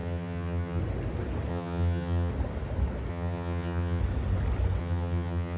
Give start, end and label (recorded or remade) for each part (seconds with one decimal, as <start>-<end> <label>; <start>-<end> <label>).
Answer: 0.0-0.8 remade; 0.8-1.5 recorded; 1.5-2.3 remade; 2.3-3.1 recorded; 3.1-4.0 remade; 4.0-4.8 recorded; 4.8-5.6 remade